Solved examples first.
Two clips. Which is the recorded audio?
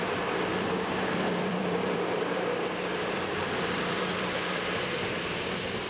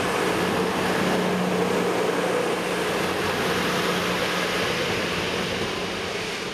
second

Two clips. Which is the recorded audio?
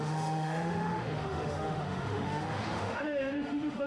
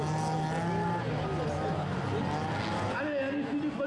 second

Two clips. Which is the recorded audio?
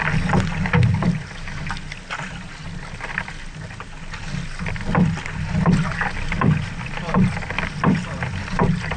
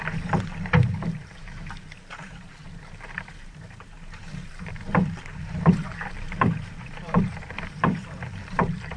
first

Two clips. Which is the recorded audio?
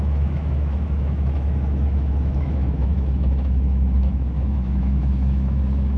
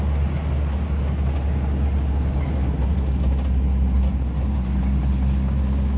second